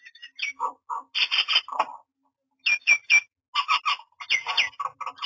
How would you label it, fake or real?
real